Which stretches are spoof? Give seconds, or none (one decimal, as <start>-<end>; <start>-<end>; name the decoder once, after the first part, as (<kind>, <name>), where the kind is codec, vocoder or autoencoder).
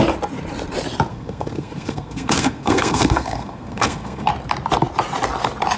1.1-4.3 (codec, SNAC)